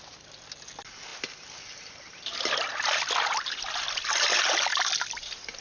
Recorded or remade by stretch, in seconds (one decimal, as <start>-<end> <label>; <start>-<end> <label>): 0.0-5.6 recorded

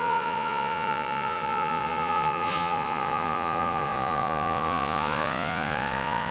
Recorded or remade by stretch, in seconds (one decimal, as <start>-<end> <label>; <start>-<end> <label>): 0.0-6.3 remade

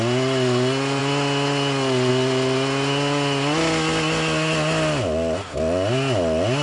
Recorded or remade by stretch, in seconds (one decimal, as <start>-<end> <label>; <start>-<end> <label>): 0.0-6.6 recorded

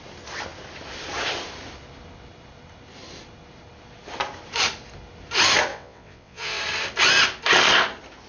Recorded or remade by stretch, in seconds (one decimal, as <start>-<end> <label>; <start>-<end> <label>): 0.0-5.7 recorded; 5.7-6.6 remade; 6.6-8.3 recorded

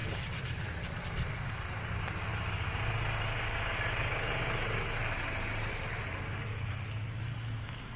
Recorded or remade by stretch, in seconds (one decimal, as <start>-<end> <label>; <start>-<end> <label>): 0.0-1.0 remade; 1.0-8.0 recorded

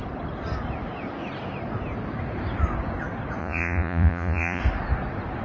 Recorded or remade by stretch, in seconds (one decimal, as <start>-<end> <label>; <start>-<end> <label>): 0.0-3.4 recorded; 3.4-4.6 remade; 4.6-5.4 recorded